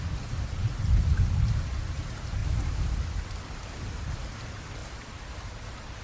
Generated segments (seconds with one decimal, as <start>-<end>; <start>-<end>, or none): 2.4-3.2